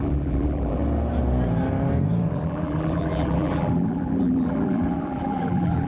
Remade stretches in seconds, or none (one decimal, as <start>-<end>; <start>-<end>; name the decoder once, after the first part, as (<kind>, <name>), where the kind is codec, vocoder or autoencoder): 0.0-0.8 (vocoder, BigVGAN v2); 2.3-5.9